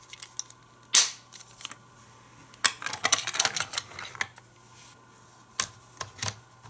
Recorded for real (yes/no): yes